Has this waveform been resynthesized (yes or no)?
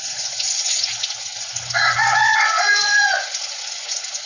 yes